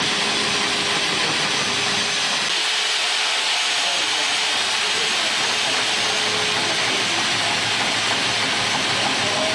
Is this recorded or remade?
recorded